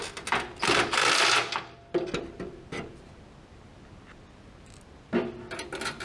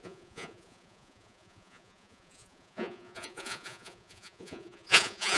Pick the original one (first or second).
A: first